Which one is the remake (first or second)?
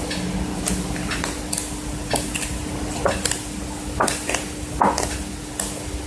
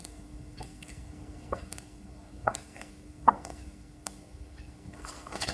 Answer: second